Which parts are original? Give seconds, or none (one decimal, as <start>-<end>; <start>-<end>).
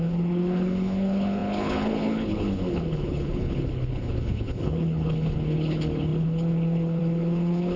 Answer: none